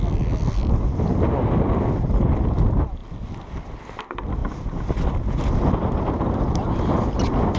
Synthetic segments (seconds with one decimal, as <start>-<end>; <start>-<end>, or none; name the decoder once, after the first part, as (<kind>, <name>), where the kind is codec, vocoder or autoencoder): none